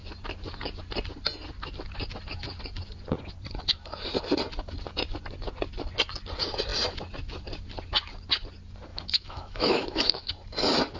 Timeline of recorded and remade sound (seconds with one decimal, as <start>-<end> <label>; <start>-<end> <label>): 0.0-8.9 recorded; 8.9-10.3 remade; 10.3-11.0 recorded